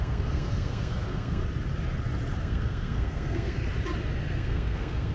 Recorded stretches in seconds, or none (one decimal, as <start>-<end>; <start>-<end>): 1.4-2.4; 3.6-4.2